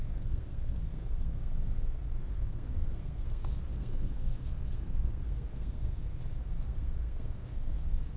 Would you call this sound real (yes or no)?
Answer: no